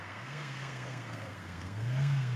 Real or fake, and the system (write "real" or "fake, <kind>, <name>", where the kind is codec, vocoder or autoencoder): fake, codec, SNAC